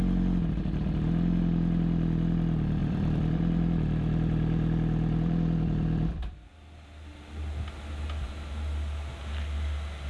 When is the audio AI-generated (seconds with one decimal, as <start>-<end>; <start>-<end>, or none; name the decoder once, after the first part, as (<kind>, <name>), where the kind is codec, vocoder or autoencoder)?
2.8-6.5 (vocoder, BigVGAN v2)